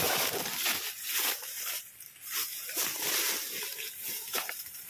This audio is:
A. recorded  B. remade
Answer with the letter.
B